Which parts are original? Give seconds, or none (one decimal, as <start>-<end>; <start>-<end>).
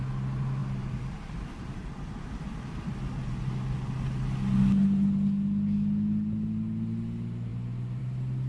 0.0-0.6; 2.3-8.5